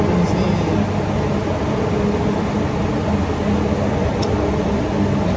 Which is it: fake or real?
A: real